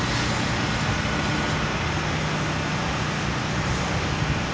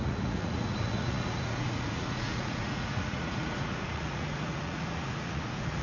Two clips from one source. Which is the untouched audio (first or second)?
first